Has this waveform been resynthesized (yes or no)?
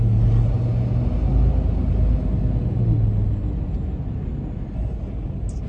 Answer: no